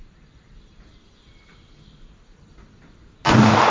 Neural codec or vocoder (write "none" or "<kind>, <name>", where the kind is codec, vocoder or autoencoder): none